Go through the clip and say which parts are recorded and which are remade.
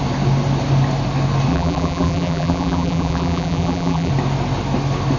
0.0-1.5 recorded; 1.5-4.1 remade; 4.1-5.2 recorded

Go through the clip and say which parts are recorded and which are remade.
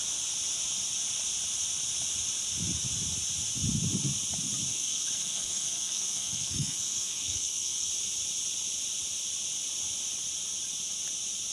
0.0-4.7 recorded; 4.7-7.9 remade; 7.9-11.5 recorded